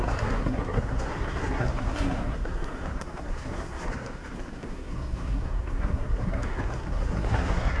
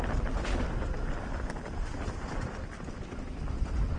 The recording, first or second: second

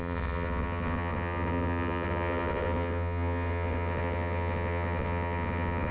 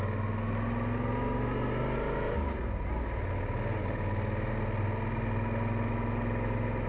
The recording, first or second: second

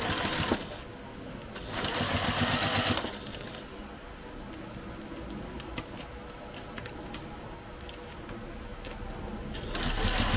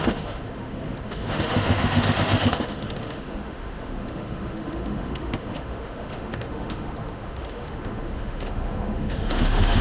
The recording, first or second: first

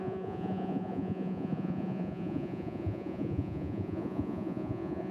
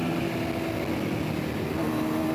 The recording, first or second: second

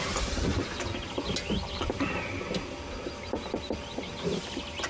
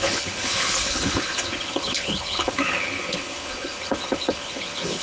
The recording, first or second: first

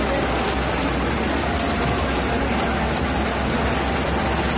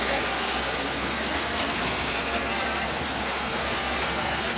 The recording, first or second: first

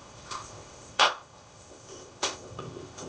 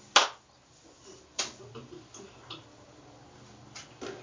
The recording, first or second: second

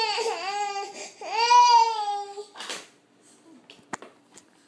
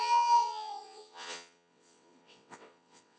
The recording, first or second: first